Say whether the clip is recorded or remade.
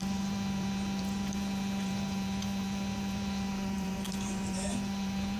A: remade